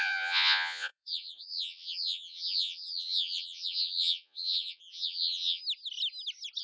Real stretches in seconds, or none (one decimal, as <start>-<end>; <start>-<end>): 5.6-6.6